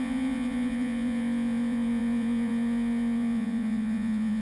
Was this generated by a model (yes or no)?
yes